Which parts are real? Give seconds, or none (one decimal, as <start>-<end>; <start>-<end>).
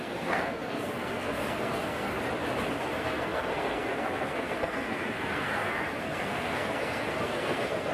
2.1-2.8